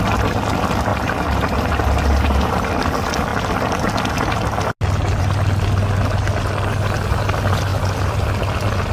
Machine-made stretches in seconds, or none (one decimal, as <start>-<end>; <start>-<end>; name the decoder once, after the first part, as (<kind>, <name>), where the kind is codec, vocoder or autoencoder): 0.9-2.7 (vocoder, BigVGAN v2)